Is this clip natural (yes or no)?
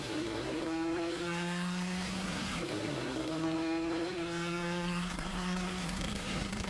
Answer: no